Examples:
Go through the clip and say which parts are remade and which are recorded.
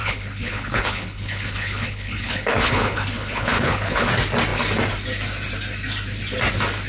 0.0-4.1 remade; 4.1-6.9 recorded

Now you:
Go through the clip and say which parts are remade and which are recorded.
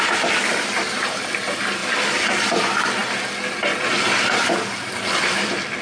0.0-5.8 recorded